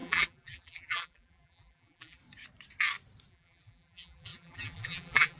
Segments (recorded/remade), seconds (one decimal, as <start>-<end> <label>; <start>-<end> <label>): 0.0-2.2 remade; 2.2-3.3 recorded; 3.3-5.4 remade